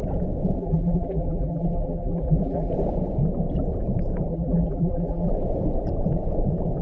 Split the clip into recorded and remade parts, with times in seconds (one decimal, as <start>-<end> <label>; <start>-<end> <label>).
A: 0.0-0.6 recorded; 0.6-2.7 remade; 2.7-4.3 recorded; 4.3-5.3 remade; 5.3-6.8 recorded